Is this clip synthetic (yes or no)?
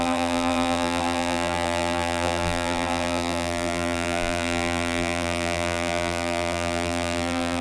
yes